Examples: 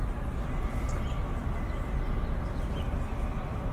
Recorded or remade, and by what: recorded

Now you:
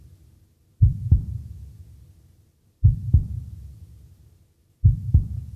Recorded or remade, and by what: recorded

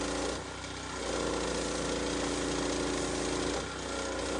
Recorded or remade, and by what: recorded